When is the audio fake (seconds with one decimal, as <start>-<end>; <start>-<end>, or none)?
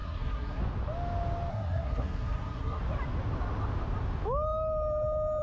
0.0-0.6; 1.5-2.8